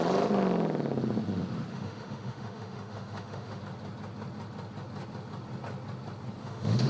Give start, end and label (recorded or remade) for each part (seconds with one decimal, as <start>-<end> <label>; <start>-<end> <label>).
0.0-1.7 recorded; 1.7-3.6 remade; 3.6-6.4 recorded; 6.4-6.9 remade

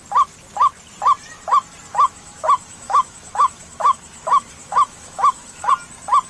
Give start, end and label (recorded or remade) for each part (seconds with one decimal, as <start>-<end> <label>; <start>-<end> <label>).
0.0-1.9 recorded; 1.9-5.7 remade; 5.7-6.3 recorded